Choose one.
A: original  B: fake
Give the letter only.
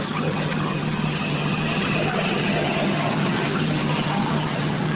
B